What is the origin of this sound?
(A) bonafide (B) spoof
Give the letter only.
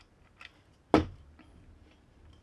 A